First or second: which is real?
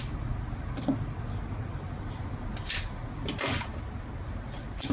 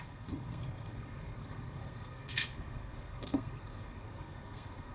first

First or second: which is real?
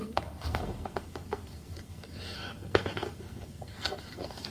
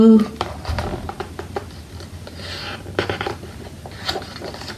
second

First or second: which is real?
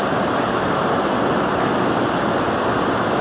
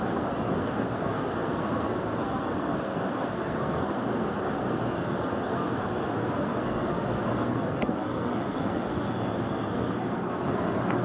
first